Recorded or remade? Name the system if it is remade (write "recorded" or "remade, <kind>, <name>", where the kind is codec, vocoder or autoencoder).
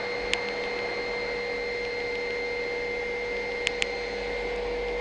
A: recorded